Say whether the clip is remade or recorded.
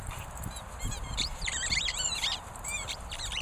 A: remade